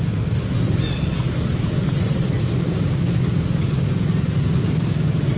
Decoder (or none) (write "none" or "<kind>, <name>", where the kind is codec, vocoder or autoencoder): none